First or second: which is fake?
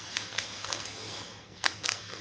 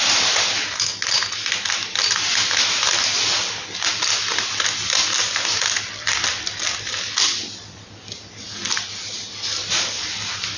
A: first